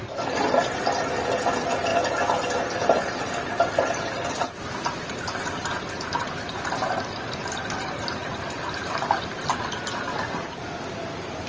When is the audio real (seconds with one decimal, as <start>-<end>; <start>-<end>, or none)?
1.9-2.6; 9.5-10.3